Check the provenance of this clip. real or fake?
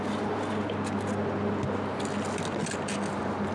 real